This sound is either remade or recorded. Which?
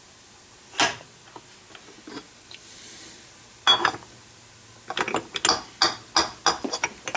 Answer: recorded